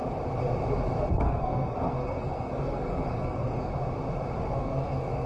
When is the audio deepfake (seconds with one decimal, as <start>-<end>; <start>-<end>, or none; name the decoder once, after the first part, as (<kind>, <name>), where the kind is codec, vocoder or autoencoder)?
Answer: 1.1-3.7 (codec, SNAC); 4.5-5.3